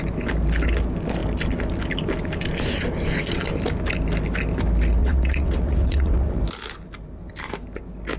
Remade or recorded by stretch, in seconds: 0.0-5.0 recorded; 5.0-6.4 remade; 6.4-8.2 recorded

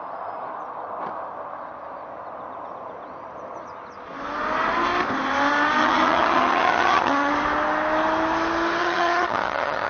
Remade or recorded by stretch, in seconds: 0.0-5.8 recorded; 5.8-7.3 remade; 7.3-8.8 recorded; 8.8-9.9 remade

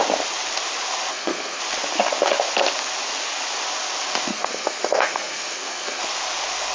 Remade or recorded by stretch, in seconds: 0.0-1.1 recorded; 1.1-1.6 remade; 1.6-4.3 recorded; 4.3-6.0 remade; 6.0-6.7 recorded